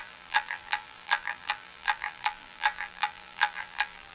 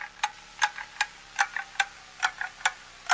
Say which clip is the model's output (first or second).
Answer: first